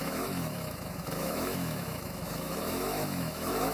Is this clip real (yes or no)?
no